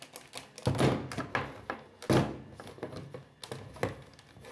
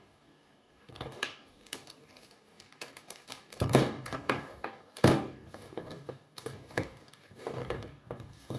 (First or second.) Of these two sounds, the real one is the first